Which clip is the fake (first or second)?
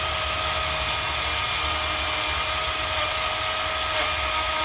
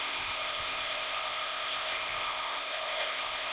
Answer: second